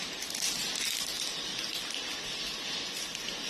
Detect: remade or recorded remade